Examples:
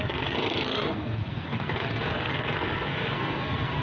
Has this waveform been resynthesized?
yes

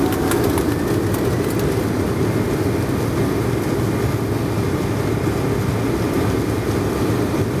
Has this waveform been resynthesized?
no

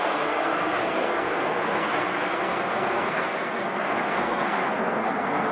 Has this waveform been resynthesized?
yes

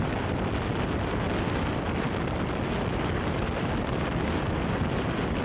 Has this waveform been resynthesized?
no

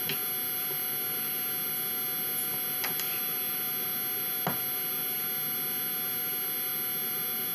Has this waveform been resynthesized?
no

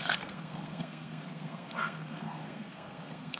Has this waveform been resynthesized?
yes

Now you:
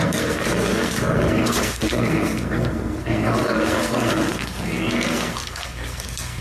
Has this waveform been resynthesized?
yes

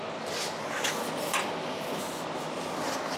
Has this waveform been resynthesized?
no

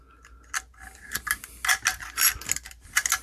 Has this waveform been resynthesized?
no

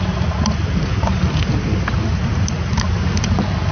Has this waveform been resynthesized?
no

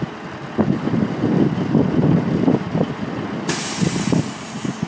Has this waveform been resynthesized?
no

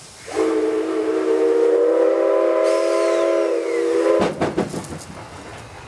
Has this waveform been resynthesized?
no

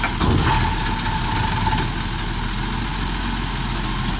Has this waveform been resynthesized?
no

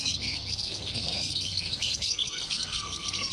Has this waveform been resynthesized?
yes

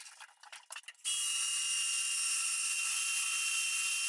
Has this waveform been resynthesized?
no